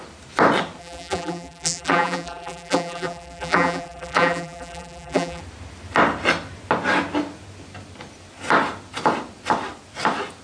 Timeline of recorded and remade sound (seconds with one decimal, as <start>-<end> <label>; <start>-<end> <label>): 0.0-0.8 recorded; 0.8-5.4 remade; 5.4-10.4 recorded